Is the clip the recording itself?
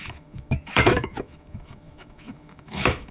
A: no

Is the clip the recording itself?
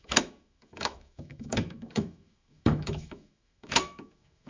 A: no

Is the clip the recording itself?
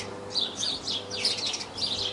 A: yes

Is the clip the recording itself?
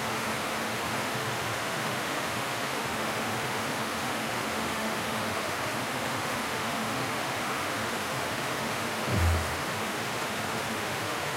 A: no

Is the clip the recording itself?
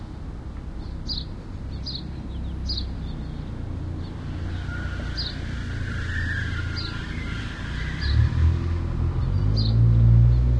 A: yes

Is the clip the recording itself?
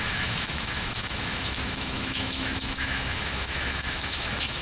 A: no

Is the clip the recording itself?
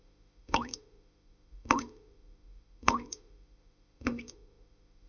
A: no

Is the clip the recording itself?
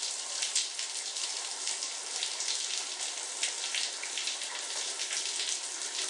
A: yes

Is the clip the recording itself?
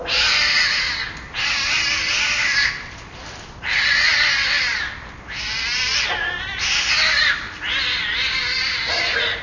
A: yes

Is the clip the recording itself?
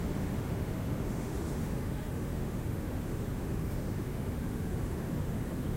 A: no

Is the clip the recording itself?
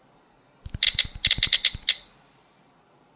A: yes